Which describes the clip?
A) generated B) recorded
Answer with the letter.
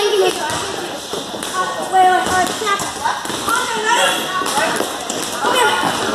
B